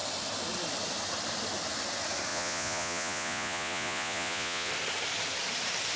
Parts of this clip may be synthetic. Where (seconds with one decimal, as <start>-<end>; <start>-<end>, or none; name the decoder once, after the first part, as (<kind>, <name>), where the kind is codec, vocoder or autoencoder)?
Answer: 2.3-4.7 (vocoder, Vocos)